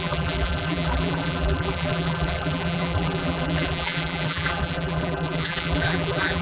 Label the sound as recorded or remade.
remade